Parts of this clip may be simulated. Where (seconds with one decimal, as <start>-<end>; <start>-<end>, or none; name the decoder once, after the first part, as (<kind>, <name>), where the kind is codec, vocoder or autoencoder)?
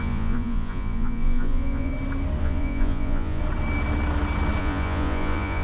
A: 0.0-1.9 (vocoder, Vocos); 2.4-3.4; 4.6-5.6